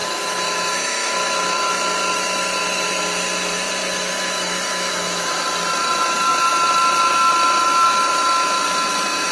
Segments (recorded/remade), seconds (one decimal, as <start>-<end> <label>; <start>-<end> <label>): 0.0-1.7 remade; 1.7-2.1 recorded; 2.1-3.0 remade; 3.0-3.8 recorded; 3.8-5.4 remade; 5.4-9.3 recorded